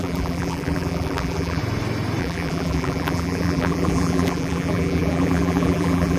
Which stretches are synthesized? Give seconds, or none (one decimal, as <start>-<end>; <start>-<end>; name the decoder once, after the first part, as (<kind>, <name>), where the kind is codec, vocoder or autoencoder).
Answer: 0.0-1.6 (vocoder, BigVGAN v2); 2.2-6.2